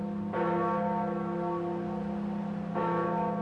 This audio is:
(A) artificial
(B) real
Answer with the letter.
B